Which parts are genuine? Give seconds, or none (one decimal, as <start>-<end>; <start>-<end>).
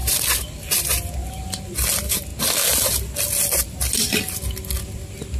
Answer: 0.0-5.4